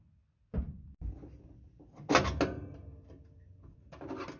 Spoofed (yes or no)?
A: no